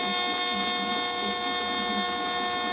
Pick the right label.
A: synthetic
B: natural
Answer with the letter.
B